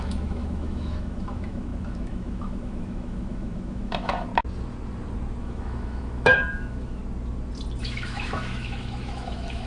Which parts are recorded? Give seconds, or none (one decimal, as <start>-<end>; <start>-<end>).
4.3-5.4; 7.0-7.8